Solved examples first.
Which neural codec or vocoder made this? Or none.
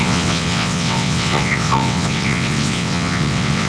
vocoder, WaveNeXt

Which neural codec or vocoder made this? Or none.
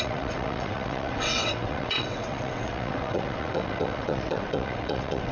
vocoder, WaveNeXt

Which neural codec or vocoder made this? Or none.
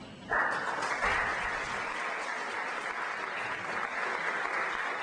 none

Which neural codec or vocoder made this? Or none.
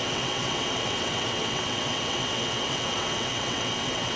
vocoder, WaveNeXt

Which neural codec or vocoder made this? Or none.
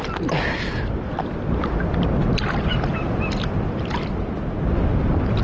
none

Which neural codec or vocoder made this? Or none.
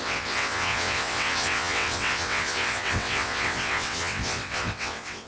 vocoder, WaveNeXt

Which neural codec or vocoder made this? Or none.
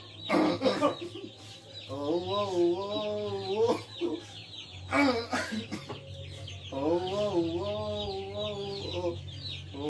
none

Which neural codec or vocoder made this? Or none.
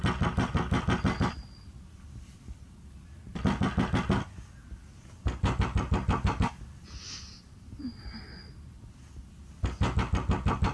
none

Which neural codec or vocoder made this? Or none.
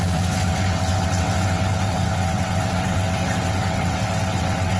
vocoder, WaveNeXt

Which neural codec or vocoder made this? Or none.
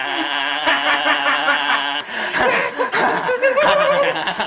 none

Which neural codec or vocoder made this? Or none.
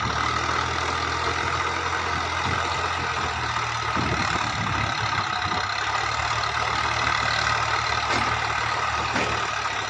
none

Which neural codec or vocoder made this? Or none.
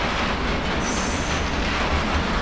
none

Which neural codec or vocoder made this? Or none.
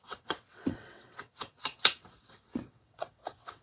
vocoder, WaveNeXt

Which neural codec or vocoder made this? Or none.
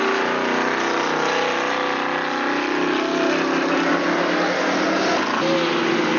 none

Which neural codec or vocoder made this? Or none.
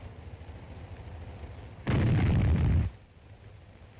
none